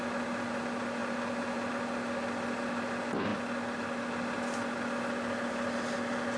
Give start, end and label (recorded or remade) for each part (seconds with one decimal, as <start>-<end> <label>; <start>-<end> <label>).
0.0-6.4 recorded